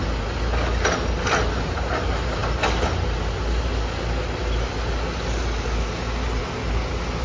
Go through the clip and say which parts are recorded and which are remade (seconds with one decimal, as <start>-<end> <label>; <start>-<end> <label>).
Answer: 0.0-7.2 recorded